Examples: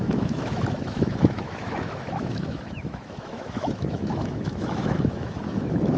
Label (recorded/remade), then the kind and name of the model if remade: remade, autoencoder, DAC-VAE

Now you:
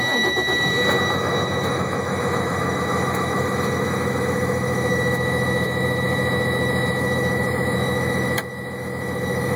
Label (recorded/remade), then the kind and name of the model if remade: remade, autoencoder, DAC-VAE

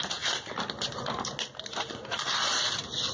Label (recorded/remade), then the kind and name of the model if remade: recorded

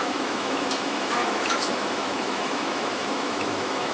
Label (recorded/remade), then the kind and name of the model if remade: remade, autoencoder, DAC-VAE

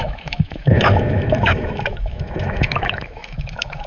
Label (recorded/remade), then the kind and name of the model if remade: remade, autoencoder, DAC-VAE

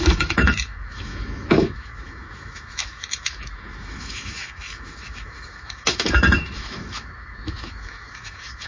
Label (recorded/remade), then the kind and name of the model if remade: remade, autoencoder, DAC-VAE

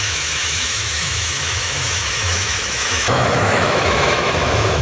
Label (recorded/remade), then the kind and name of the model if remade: remade, autoencoder, DAC-VAE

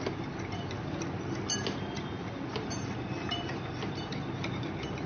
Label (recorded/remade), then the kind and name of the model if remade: recorded